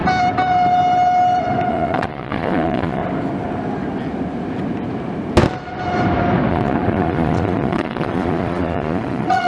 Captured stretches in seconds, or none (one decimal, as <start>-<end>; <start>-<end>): 0.0-1.7; 3.0-6.5

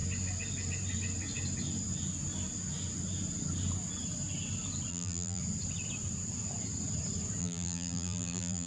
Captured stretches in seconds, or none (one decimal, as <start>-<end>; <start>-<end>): 0.0-4.9; 5.4-7.4

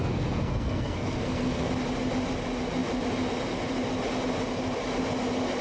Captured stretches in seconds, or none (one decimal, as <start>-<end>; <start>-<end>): 1.7-5.6

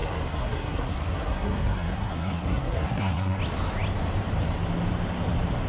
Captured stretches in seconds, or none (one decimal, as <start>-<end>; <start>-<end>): 3.4-5.7